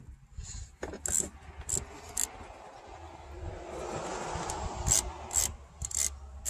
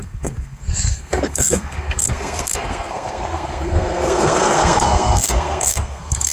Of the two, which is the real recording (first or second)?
first